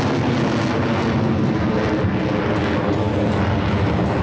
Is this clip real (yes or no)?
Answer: yes